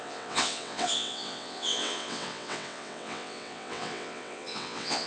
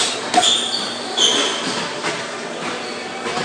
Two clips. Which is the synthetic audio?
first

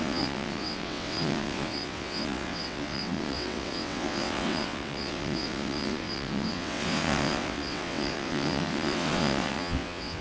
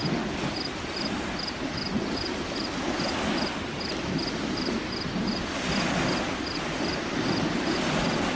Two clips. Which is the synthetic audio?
first